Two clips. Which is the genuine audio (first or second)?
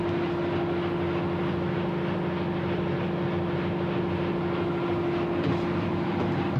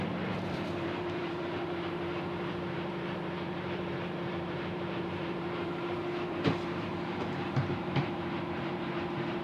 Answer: first